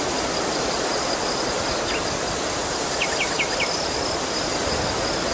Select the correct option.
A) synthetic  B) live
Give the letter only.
B